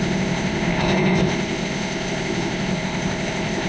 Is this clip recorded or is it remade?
remade